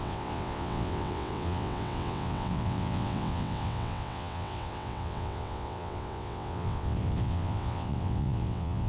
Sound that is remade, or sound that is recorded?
remade